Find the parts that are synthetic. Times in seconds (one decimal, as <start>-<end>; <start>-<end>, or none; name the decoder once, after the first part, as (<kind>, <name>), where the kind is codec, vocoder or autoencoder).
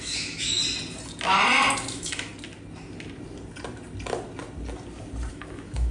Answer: 0.0-0.6 (autoencoder, DAC-VAE); 1.9-2.3; 5.3-5.9